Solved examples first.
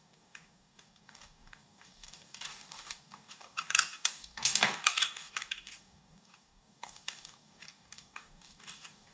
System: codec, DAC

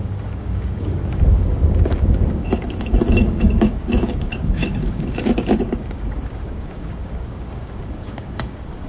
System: codec, DAC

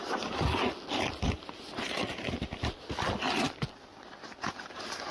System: none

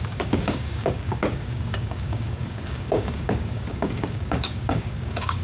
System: codec, DAC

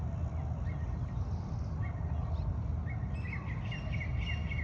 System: none